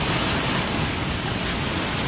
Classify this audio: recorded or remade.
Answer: recorded